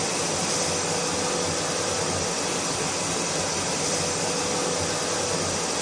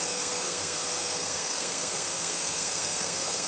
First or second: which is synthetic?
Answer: second